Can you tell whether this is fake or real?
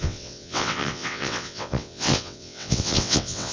fake